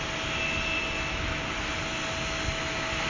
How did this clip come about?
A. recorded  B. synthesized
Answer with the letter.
A